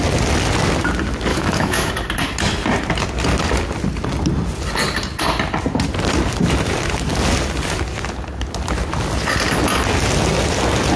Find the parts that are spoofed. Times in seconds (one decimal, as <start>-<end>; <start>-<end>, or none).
1.3-1.9